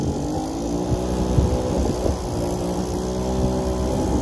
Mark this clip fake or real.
real